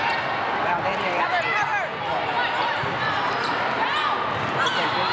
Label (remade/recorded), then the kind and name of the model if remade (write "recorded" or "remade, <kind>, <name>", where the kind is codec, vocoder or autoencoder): recorded